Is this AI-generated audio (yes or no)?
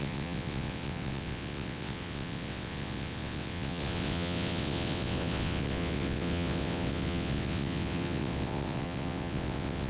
yes